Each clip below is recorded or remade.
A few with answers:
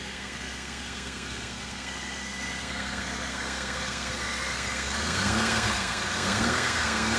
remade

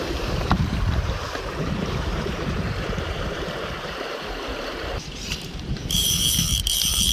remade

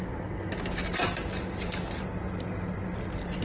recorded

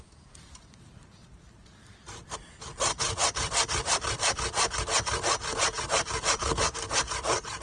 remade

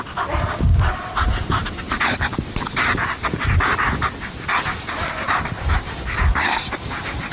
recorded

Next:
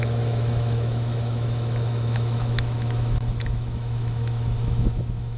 remade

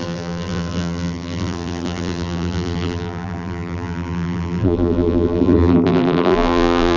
remade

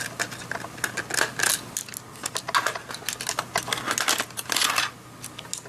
recorded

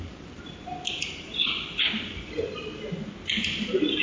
recorded